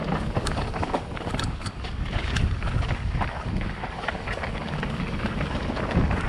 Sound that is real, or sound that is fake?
fake